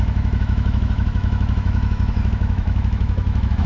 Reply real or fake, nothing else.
fake